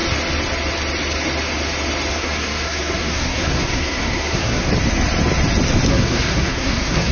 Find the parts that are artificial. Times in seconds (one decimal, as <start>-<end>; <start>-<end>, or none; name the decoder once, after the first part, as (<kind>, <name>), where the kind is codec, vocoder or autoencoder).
2.1-4.7 (codec, SNAC); 5.9-7.1